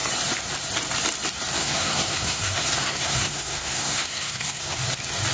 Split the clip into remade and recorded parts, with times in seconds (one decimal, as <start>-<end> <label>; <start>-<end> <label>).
0.0-1.6 recorded; 1.6-4.8 remade; 4.8-5.3 recorded